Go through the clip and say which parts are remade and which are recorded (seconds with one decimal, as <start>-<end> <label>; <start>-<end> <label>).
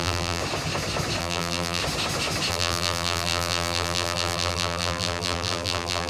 0.0-0.4 remade; 0.4-1.2 recorded; 1.2-1.8 remade; 1.8-2.5 recorded; 2.5-6.1 remade